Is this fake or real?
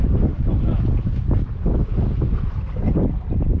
real